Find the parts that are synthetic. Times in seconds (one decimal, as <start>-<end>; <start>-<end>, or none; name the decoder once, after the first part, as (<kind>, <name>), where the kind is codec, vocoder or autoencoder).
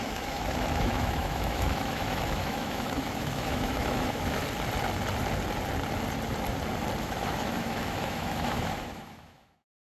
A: 0.0-4.4 (autoencoder, DAC-VAE); 7.0-9.9